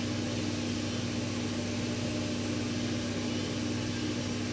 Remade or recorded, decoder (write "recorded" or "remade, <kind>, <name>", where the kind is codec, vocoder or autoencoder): recorded